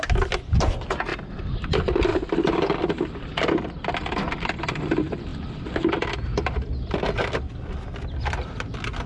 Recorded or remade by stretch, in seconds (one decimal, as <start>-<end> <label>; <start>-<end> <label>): 0.0-1.1 recorded; 1.1-1.7 remade; 1.7-9.1 recorded